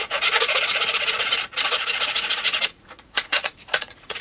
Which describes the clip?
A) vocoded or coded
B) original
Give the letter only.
A